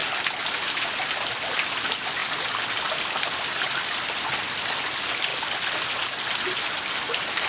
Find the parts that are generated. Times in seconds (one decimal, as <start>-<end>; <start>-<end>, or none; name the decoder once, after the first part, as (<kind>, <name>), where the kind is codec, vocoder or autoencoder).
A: none